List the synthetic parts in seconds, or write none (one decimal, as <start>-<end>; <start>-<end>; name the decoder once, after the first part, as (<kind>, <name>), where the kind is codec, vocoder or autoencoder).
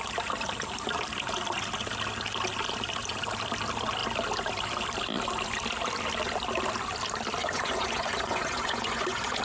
7.4-9.4 (vocoder, Vocos)